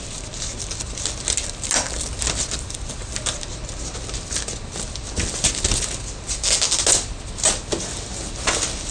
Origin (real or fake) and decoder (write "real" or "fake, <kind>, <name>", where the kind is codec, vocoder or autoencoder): real